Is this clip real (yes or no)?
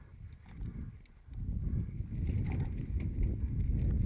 yes